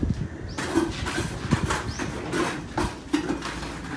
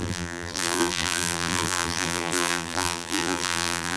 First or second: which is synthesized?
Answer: second